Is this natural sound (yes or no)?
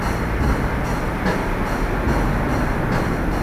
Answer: yes